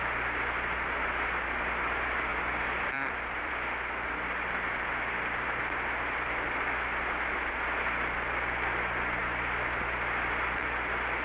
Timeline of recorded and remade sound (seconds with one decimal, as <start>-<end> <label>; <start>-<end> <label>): 0.0-2.3 recorded; 2.3-3.5 remade; 3.5-11.2 recorded

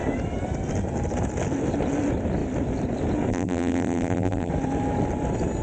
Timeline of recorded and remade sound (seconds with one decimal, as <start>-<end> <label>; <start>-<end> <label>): 0.0-3.3 recorded; 3.3-4.5 remade; 4.5-5.6 recorded

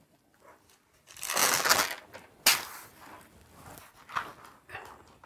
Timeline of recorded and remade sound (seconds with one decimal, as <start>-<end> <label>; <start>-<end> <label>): 0.0-1.4 recorded; 1.4-2.0 remade; 2.0-5.3 recorded

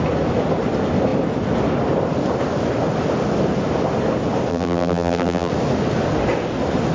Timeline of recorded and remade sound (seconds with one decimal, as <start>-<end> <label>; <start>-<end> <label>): 0.0-4.5 recorded; 4.5-5.5 remade; 5.5-6.9 recorded

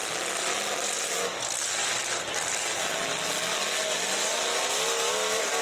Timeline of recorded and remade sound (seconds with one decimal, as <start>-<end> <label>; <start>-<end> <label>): 0.0-1.8 recorded; 1.8-2.5 remade; 2.5-5.6 recorded

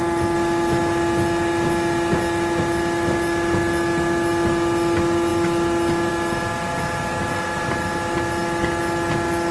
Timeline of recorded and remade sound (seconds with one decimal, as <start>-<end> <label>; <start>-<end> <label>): 0.0-9.5 recorded